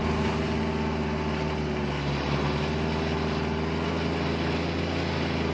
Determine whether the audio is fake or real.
real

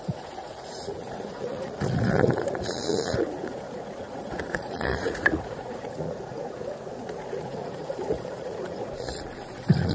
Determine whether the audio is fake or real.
fake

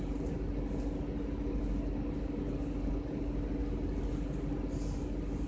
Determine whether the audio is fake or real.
real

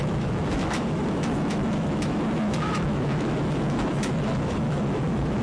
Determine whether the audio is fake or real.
fake